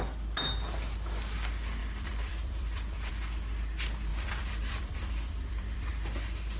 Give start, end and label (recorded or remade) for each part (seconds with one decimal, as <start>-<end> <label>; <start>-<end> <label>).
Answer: 0.0-1.8 recorded; 1.8-3.1 remade; 3.1-4.1 recorded; 4.1-5.9 remade; 5.9-6.6 recorded